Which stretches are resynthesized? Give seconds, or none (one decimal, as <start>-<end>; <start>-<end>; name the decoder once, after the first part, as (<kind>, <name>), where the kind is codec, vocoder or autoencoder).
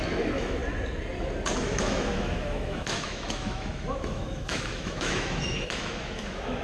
0.0-0.6 (autoencoder, DAC-VAE); 1.6-6.6